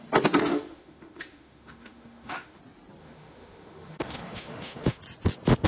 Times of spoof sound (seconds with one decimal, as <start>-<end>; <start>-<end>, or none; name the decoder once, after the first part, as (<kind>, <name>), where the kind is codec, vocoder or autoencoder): 0.5-2.6 (autoencoder, DAC-VAE); 3.0-5.0